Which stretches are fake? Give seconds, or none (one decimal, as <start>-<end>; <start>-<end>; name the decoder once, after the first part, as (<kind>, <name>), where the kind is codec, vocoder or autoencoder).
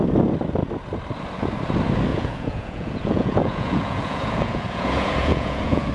2.1-5.9 (vocoder, Vocos)